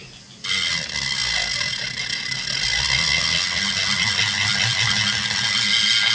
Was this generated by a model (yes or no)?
no